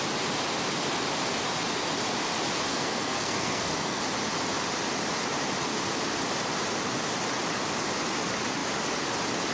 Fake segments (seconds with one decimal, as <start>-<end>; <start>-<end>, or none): 2.7-4.0